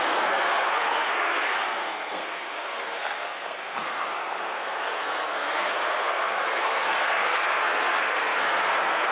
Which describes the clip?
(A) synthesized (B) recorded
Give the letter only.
A